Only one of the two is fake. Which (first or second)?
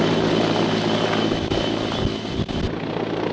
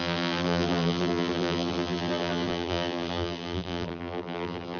second